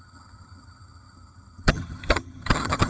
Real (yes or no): no